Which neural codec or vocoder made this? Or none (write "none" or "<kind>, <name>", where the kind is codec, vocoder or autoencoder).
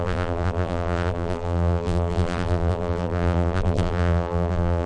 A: vocoder, BigVGAN v2